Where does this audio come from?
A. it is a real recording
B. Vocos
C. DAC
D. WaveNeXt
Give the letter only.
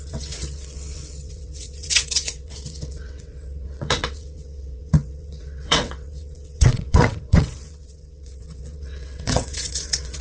D